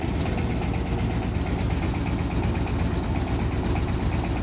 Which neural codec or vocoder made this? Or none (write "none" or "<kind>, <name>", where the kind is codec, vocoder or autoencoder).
none